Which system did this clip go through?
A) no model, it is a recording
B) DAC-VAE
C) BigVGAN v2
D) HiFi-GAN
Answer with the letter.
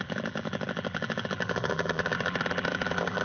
C